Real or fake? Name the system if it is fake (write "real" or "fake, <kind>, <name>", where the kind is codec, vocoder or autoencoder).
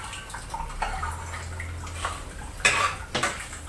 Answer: real